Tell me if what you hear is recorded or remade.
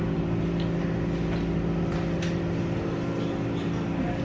recorded